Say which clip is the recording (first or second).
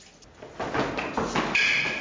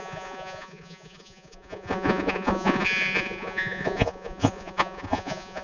first